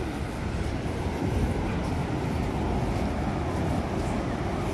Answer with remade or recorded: recorded